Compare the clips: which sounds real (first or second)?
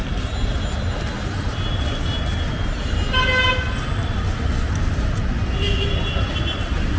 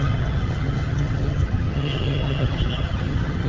first